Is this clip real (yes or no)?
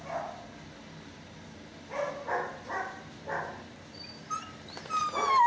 yes